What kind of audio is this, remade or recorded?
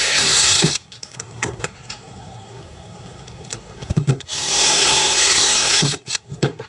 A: remade